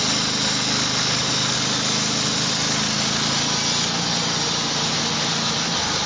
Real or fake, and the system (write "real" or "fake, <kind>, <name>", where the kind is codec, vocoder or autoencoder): real